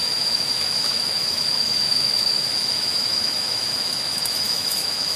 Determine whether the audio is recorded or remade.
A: remade